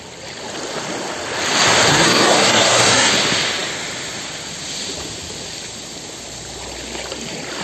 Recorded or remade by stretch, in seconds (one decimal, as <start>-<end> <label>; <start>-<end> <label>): 0.0-1.9 recorded; 1.9-3.1 remade; 3.1-7.6 recorded